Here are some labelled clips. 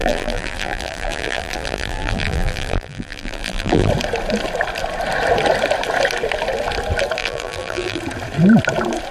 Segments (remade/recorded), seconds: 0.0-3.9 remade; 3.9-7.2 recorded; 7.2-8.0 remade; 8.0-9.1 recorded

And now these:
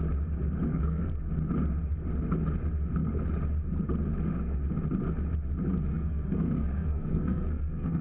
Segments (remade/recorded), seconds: 0.0-0.7 recorded; 0.7-1.2 remade; 1.2-5.9 recorded; 5.9-8.0 remade

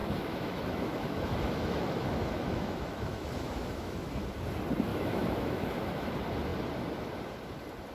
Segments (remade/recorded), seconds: 0.0-4.2 remade; 4.2-4.9 recorded; 4.9-6.1 remade; 6.1-7.9 recorded

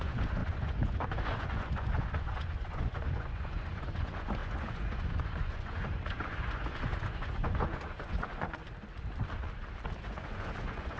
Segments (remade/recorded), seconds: 0.0-8.6 remade; 8.6-10.0 recorded; 10.0-11.0 remade